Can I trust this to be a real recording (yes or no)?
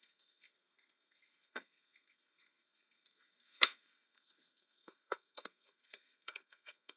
no